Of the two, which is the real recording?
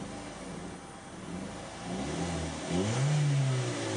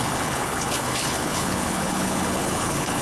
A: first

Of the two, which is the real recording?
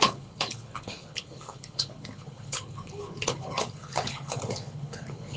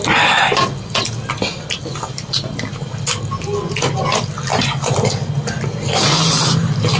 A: second